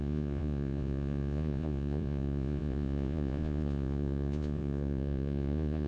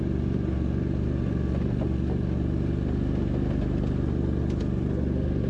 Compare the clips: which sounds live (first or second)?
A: second